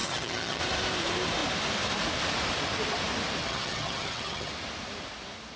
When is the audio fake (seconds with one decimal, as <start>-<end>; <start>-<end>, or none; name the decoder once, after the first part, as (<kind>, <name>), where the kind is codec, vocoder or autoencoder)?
0.0-0.6 (vocoder, HiFi-GAN); 3.4-4.5